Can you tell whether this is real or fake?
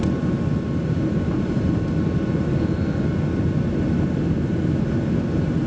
real